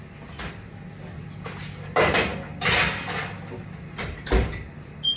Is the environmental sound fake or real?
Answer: real